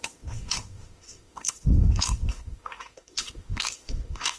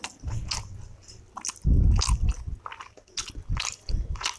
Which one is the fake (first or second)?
first